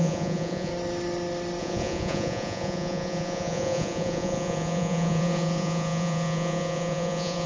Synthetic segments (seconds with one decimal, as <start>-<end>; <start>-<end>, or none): 0.0-0.7; 1.6-7.5